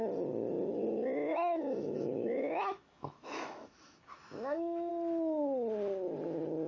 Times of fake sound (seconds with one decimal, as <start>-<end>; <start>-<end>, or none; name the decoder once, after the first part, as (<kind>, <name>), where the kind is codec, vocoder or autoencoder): 1.3-4.9 (autoencoder, DAC-VAE)